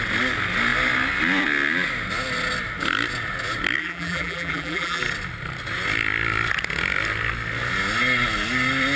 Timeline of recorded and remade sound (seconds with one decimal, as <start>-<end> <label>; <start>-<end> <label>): 0.0-3.8 recorded; 3.8-5.0 remade; 5.0-9.0 recorded